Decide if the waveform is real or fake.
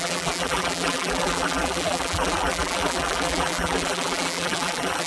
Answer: fake